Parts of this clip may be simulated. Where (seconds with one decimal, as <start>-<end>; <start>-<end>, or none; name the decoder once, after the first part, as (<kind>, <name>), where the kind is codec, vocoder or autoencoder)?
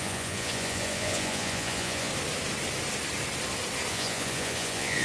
0.0-2.1 (vocoder, Vocos); 3.9-5.0